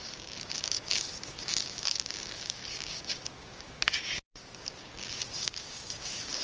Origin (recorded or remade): remade